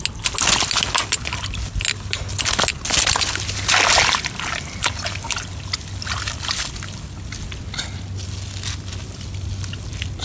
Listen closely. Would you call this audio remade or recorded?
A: recorded